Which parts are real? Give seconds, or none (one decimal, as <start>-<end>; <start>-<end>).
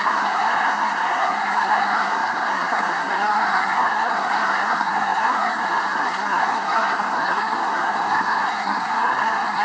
none